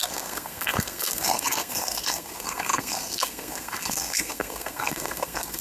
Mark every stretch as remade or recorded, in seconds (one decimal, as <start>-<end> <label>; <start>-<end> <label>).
0.0-5.6 remade